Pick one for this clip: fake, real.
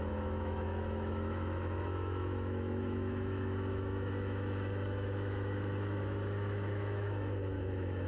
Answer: fake